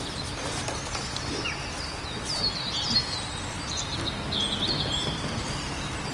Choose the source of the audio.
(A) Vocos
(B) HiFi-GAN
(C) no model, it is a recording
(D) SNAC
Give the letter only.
C